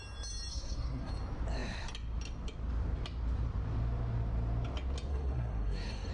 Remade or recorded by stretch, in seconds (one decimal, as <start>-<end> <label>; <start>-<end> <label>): 0.0-0.5 recorded; 0.5-1.1 remade; 1.1-5.1 recorded; 5.1-6.1 remade